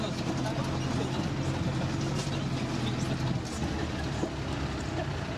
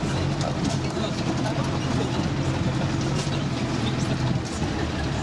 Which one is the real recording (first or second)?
first